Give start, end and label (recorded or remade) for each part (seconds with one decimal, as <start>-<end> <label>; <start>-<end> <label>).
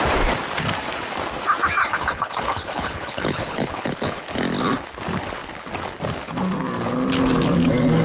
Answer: 0.0-1.8 recorded; 1.8-4.3 remade; 4.3-8.0 recorded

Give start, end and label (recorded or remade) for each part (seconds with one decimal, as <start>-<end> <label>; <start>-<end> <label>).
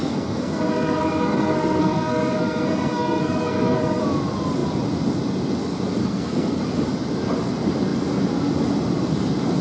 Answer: 0.0-4.0 remade; 4.0-6.0 recorded; 6.0-6.6 remade; 6.6-9.6 recorded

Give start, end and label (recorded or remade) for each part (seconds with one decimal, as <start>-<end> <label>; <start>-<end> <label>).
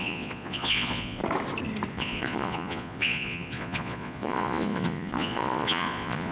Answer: 0.0-1.2 remade; 1.2-1.9 recorded; 1.9-6.3 remade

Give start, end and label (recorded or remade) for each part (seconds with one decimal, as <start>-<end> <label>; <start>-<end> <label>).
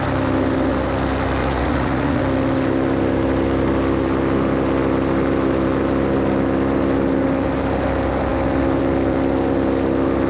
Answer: 0.0-1.4 recorded; 1.4-2.2 remade; 2.2-10.3 recorded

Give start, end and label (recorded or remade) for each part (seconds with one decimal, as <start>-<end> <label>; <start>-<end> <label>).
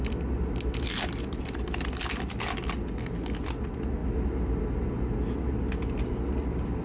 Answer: 0.0-6.8 recorded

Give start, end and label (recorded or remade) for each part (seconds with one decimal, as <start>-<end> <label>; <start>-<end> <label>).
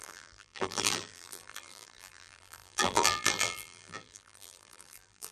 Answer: 0.0-5.3 remade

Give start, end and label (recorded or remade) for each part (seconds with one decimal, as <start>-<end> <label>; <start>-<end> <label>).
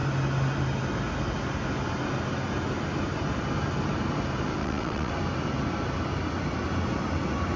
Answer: 0.0-4.6 recorded; 4.6-5.1 remade; 5.1-7.6 recorded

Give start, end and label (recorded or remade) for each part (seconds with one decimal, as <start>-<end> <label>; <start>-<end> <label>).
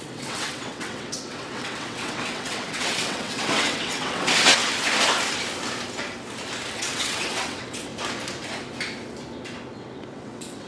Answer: 0.0-4.6 remade; 4.6-6.7 recorded; 6.7-7.9 remade; 7.9-9.7 recorded; 9.7-10.7 remade